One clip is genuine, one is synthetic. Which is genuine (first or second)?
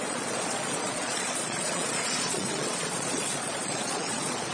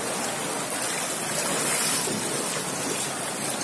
second